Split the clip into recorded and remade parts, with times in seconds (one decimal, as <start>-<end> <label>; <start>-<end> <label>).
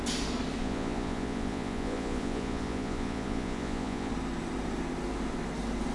0.0-0.6 recorded; 0.6-4.1 remade; 4.1-5.9 recorded